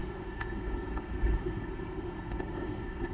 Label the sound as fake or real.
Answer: fake